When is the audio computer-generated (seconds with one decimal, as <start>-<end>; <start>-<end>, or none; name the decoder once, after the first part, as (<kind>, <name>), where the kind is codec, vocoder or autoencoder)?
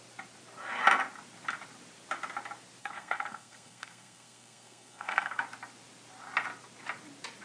2.8-5.4 (codec, SNAC)